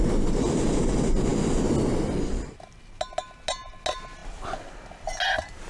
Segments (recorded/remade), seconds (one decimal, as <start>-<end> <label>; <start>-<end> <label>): 0.0-5.7 recorded